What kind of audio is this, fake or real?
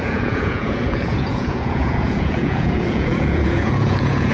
fake